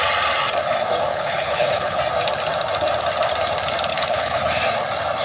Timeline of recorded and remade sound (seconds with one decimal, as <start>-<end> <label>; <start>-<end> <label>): 0.0-1.1 recorded; 1.1-2.0 remade; 2.0-3.9 recorded; 3.9-4.4 remade; 4.4-5.2 recorded